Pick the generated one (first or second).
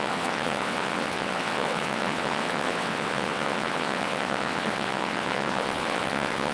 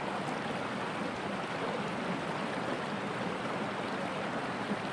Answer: first